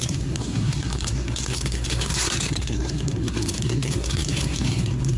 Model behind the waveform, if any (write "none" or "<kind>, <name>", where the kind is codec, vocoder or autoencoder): codec, SNAC